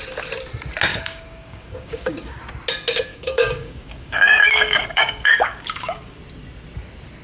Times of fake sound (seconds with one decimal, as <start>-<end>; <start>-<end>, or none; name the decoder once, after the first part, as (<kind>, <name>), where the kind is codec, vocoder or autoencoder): 0.9-2.4 (codec, DAC); 3.1-6.2